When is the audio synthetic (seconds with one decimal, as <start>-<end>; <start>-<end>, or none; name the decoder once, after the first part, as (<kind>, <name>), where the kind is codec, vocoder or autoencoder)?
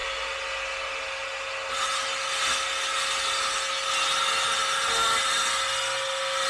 none